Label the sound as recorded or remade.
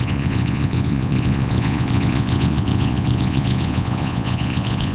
remade